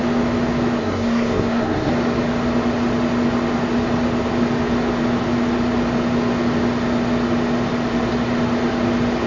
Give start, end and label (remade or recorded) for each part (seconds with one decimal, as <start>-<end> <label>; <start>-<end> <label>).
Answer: 0.0-0.8 recorded; 0.8-1.9 remade; 1.9-9.3 recorded